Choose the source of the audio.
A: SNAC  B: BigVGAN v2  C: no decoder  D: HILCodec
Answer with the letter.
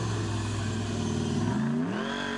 C